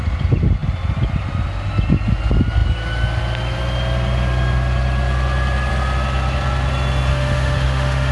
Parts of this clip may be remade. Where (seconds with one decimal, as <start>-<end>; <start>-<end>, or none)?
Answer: 7.1-8.1